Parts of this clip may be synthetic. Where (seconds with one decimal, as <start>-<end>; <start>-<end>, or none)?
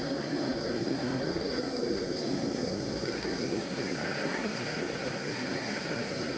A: 0.0-6.4